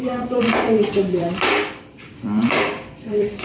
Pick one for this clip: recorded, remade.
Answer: remade